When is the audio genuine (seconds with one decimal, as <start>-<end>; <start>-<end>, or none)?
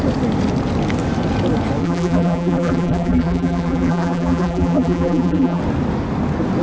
0.0-1.8; 5.6-6.6